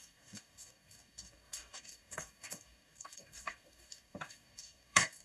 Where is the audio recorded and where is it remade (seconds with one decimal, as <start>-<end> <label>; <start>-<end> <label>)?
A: 0.0-5.2 remade